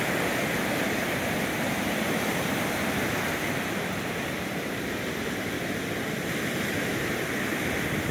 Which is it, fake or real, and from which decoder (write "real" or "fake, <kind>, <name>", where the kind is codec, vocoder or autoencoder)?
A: real